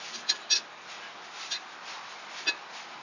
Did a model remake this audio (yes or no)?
no